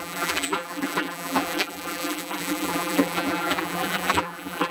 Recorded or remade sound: remade